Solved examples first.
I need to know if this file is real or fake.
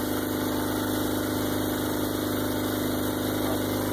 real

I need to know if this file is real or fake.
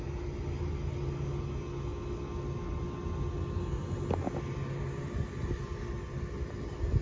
real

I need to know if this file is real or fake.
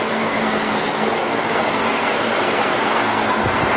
fake